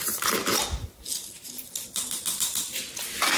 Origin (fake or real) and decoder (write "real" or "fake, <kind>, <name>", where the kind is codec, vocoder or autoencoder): real